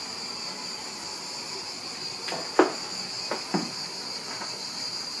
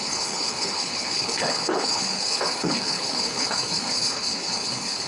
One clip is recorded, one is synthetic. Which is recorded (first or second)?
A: first